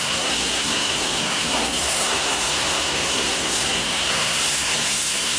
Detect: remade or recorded remade